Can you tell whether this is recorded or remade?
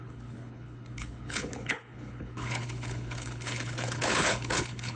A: remade